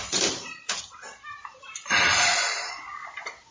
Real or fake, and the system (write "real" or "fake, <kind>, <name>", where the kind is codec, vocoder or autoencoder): real